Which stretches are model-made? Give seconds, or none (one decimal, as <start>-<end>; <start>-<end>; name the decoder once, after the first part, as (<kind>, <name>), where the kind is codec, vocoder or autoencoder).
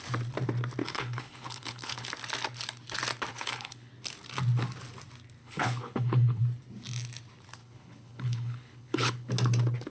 0.8-2.1 (codec, HILCodec); 3.3-3.9; 5.4-6.4; 7.6-9.3